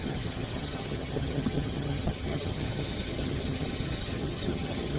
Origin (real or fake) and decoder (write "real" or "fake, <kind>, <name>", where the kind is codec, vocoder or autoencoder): fake, vocoder, HiFi-GAN